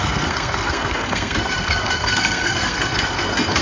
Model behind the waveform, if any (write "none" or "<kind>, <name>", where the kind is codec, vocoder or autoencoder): codec, SNAC